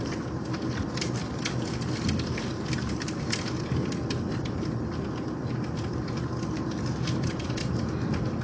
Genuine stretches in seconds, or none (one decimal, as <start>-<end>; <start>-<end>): 0.0-8.4